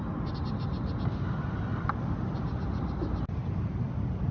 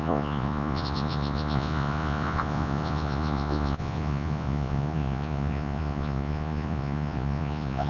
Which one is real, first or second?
first